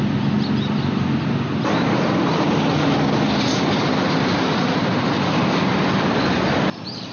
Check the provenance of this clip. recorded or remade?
recorded